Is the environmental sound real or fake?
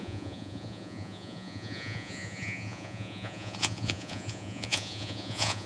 fake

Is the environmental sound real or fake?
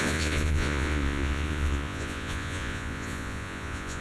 fake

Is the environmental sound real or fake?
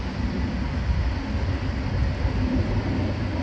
real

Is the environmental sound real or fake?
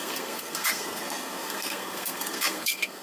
fake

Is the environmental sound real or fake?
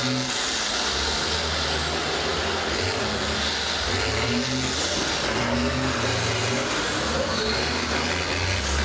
real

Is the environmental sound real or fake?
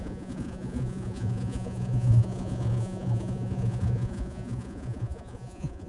fake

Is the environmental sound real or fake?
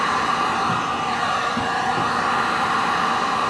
fake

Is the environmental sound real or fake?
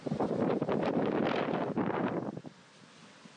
real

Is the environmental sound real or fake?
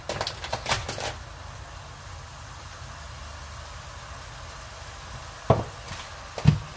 real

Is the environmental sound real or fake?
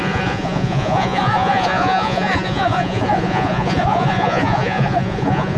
fake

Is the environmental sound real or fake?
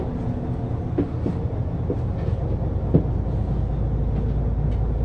real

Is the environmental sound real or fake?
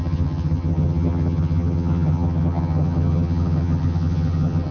fake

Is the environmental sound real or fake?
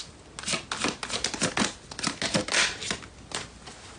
real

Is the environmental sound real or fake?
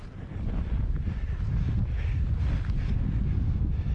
real